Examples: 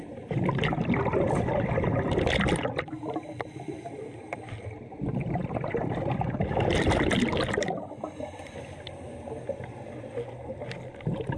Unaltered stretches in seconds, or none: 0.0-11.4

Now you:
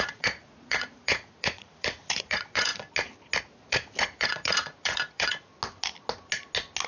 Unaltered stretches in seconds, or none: 2.7-3.4; 5.5-6.9

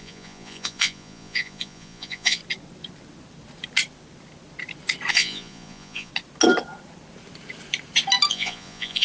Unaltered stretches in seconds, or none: 2.4-5.1; 6.1-8.3

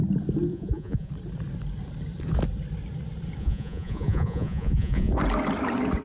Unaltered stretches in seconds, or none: 0.0-0.5; 1.1-3.4; 5.1-6.0